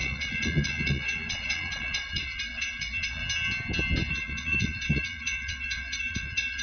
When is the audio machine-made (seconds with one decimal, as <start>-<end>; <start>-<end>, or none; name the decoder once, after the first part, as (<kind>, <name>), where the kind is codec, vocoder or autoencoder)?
0.0-3.2 (vocoder, Vocos); 4.1-6.6